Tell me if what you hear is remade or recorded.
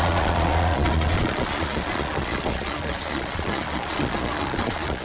remade